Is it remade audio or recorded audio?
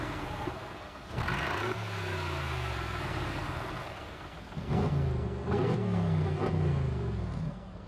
remade